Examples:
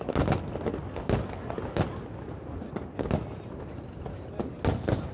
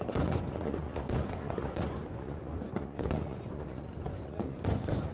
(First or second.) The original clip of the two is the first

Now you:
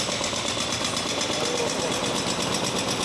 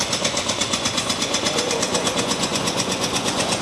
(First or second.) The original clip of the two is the first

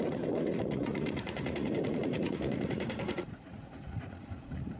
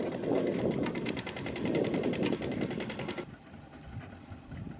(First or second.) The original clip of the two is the second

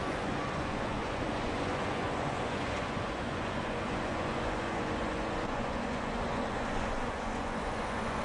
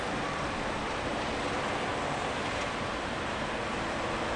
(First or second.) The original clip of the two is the second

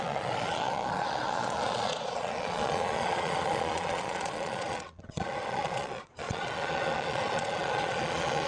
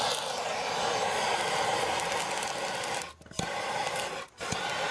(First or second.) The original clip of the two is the second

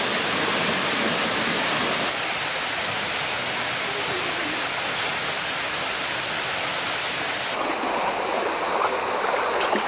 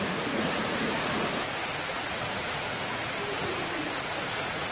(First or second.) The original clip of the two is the first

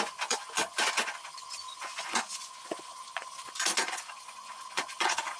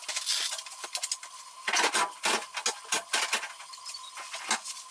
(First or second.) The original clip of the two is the second